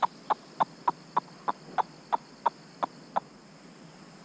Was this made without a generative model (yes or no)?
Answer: yes